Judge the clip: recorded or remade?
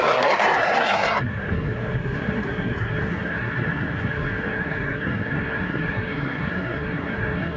remade